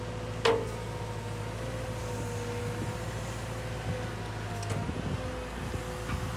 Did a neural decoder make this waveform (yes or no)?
no